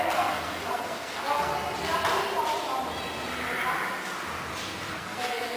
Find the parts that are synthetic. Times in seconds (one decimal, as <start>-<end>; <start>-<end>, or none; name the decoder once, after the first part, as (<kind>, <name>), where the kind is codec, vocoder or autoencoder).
0.0-1.5 (codec, SNAC); 4.9-5.6